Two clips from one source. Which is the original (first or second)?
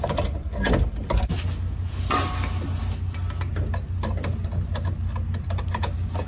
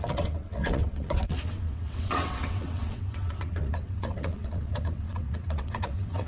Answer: first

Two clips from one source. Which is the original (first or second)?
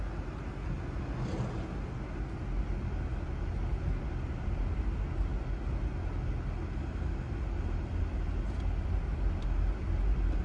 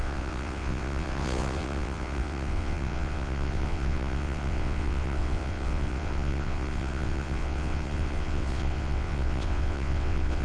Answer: first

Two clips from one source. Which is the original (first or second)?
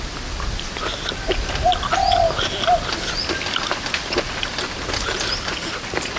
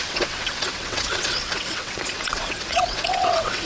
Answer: first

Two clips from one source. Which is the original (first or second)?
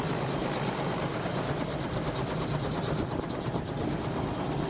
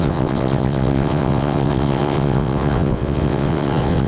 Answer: first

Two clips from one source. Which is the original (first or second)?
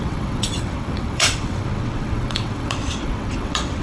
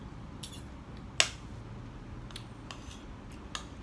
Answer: second